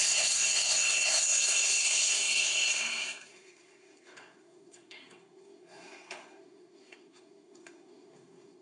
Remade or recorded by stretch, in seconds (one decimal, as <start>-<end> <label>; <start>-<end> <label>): 0.0-8.6 remade

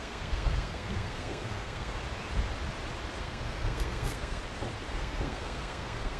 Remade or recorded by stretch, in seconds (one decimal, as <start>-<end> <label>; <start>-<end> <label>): 0.0-2.0 remade; 2.0-3.2 recorded; 3.2-4.4 remade; 4.4-4.9 recorded; 4.9-6.2 remade

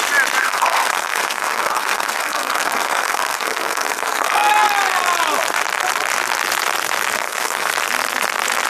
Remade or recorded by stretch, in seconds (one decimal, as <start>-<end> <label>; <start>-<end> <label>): 0.0-0.4 recorded; 0.4-4.5 remade; 4.5-7.2 recorded; 7.2-7.7 remade; 7.7-8.7 recorded

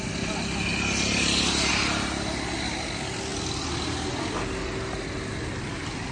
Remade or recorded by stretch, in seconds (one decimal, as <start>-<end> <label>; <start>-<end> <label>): 0.0-6.1 recorded

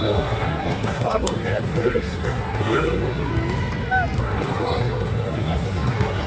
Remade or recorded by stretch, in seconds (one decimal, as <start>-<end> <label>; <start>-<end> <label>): 0.0-3.3 remade; 3.3-4.2 recorded; 4.2-6.3 remade